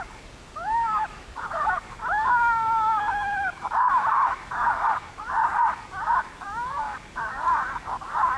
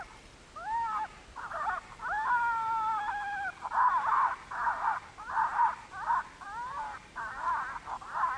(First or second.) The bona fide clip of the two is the second